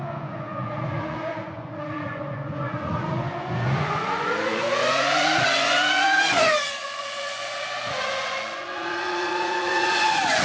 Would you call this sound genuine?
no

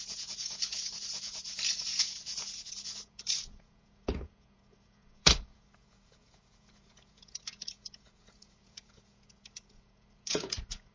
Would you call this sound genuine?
no